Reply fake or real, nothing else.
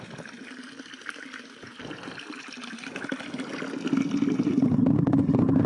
real